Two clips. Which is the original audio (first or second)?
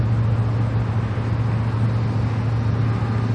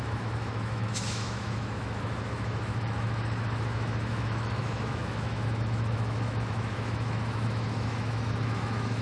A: first